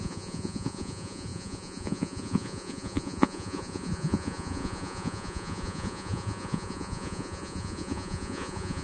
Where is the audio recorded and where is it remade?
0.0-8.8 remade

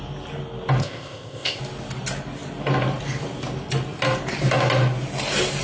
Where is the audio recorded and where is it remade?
0.0-0.8 recorded; 0.8-1.6 remade; 1.6-5.6 recorded

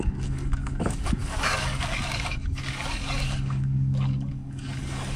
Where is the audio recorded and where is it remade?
0.0-5.2 remade

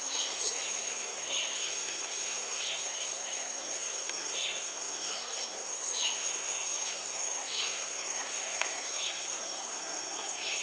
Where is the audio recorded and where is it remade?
0.0-10.6 remade

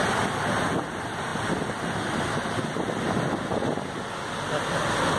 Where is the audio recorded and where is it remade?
0.0-5.2 recorded

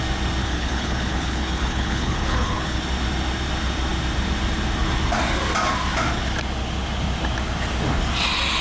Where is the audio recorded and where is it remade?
0.0-0.4 recorded; 0.4-2.8 remade; 2.8-8.6 recorded